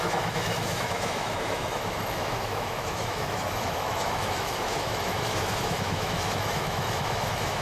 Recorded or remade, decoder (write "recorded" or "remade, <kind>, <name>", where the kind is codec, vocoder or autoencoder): remade, autoencoder, DAC-VAE